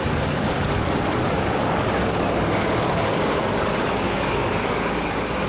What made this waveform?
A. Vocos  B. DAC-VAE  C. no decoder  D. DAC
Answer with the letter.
D